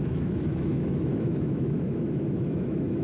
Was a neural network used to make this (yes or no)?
yes